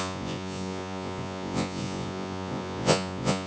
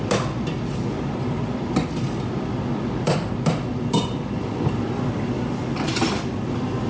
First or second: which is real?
second